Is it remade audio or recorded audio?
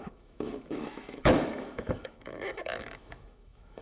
remade